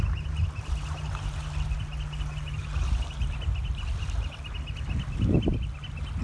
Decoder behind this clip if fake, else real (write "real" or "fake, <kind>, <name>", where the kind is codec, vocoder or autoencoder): real